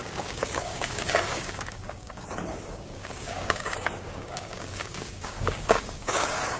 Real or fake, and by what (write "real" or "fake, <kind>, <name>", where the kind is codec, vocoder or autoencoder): fake, codec, DAC